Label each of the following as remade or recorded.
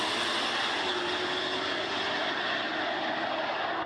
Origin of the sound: recorded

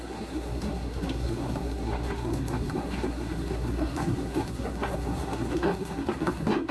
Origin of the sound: remade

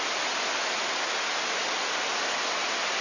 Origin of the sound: recorded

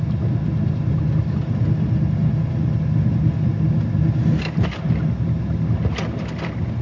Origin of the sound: recorded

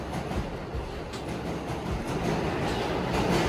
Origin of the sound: recorded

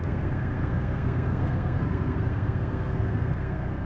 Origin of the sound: remade